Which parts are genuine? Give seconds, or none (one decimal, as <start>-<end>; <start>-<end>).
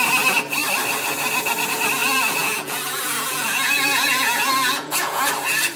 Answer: 0.0-2.0; 5.3-5.8